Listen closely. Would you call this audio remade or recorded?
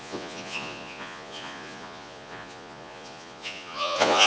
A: remade